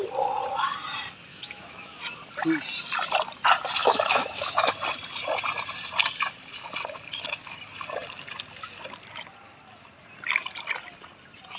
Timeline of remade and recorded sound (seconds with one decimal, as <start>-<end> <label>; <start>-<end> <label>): 0.0-1.3 recorded; 1.3-2.0 remade; 2.0-3.8 recorded; 3.8-4.7 remade; 4.7-11.6 recorded